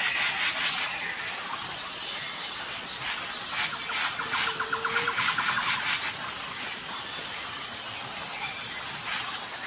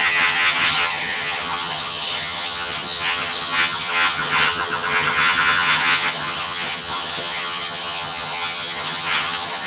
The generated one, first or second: second